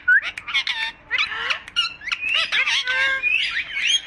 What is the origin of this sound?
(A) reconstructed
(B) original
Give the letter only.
B